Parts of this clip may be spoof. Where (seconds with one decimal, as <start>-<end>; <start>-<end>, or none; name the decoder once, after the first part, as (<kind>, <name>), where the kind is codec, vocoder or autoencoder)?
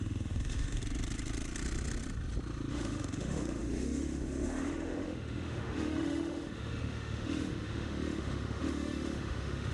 0.0-0.8 (autoencoder, DAC-VAE); 2.7-9.7